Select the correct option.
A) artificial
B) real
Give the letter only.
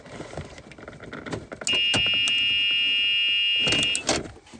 B